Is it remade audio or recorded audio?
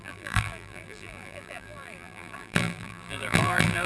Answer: remade